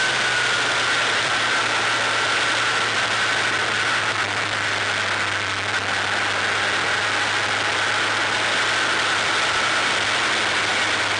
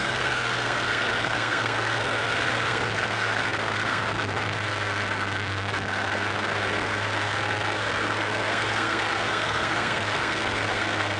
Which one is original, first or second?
first